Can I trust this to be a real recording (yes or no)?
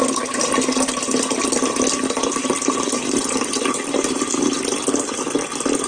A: yes